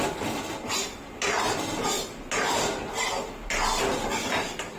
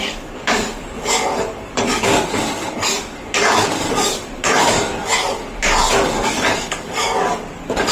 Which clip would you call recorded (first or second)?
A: first